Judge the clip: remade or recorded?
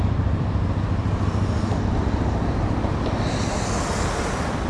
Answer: recorded